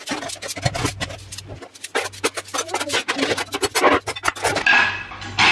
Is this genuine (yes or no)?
yes